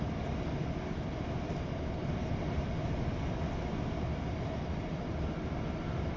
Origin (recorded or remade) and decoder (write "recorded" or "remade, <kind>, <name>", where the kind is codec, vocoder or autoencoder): recorded